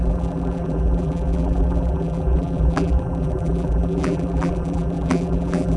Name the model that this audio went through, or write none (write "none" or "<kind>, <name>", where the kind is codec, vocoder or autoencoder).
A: vocoder, BigVGAN v2